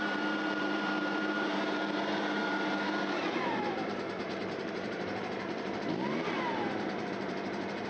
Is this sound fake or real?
fake